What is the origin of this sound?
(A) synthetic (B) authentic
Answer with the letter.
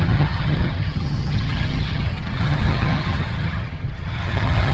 A